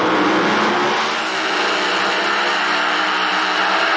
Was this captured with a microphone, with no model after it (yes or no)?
yes